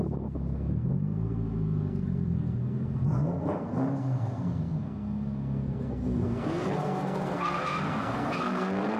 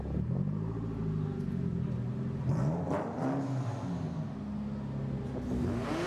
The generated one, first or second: first